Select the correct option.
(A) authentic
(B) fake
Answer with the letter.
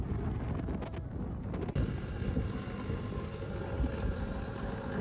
A